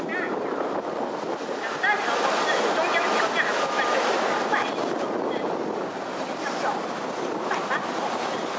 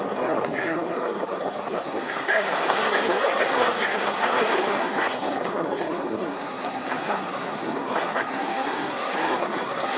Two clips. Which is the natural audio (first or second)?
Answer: first